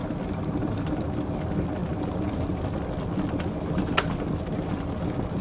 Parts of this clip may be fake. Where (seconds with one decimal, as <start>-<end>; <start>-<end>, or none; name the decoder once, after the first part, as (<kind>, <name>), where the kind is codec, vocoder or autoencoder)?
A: none